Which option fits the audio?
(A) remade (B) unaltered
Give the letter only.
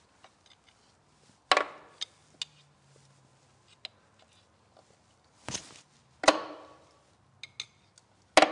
B